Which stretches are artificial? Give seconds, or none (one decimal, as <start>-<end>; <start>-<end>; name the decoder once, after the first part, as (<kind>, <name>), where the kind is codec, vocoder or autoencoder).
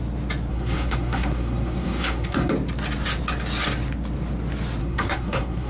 0.5-2.5 (codec, SNAC); 4.8-5.7